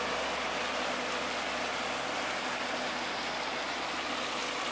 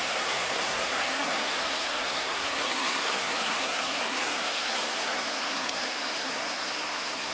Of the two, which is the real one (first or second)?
first